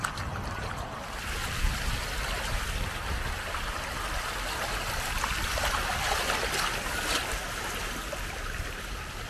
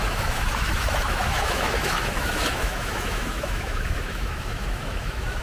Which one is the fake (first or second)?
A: second